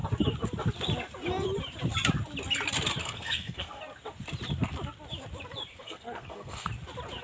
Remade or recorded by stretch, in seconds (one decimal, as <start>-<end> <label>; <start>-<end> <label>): 0.0-3.0 recorded; 3.0-3.8 remade; 3.8-5.7 recorded; 5.7-6.7 remade; 6.7-7.2 recorded